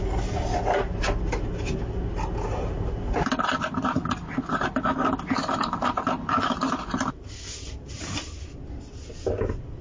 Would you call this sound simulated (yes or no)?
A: no